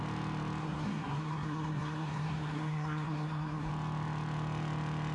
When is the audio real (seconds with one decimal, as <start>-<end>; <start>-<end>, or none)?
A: 0.0-0.6; 3.7-5.1

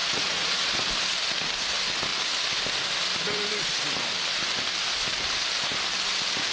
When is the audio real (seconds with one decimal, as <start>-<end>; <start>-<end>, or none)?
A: 0.6-6.5

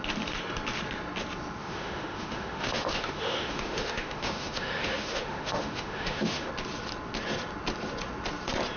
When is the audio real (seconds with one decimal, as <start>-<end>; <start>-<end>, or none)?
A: 0.0-1.6; 6.5-8.8

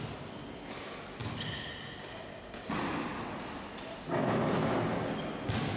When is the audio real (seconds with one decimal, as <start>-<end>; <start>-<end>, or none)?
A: 0.0-5.8

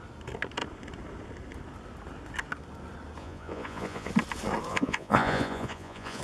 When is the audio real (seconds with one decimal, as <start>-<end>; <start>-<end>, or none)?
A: 0.0-3.2; 4.1-4.7